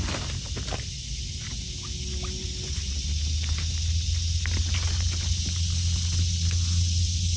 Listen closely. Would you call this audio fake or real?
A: real